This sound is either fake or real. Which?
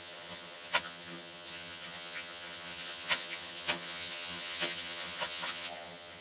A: fake